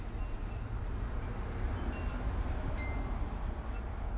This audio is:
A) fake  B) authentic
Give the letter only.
B